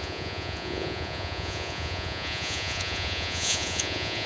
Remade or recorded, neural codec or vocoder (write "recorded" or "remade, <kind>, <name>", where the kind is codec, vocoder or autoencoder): remade, vocoder, Vocos